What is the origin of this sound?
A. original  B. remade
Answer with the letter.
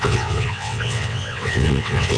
B